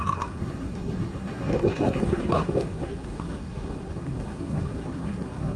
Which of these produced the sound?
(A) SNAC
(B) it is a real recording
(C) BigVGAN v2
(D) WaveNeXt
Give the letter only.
A